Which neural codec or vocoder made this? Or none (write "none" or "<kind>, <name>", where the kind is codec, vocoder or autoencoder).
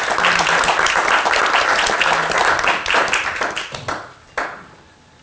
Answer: vocoder, BigVGAN v2